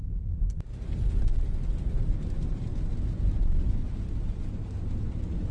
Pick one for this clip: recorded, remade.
remade